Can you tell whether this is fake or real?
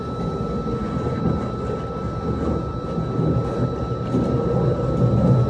real